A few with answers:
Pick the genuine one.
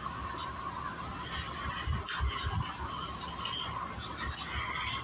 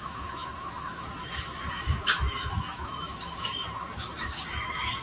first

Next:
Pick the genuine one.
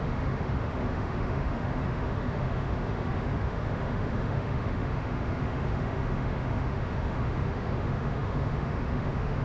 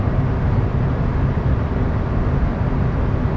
second